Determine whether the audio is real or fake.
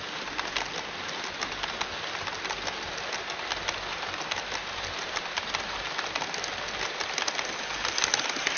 real